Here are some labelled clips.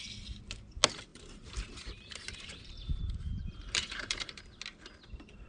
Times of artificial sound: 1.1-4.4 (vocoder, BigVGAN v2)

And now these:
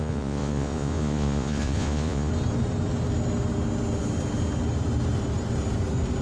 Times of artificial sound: 0.0-2.3 (vocoder, Vocos)

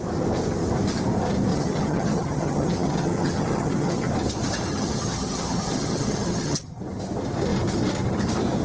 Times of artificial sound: 1.5-4.1 (vocoder, HiFi-GAN); 4.7-6.8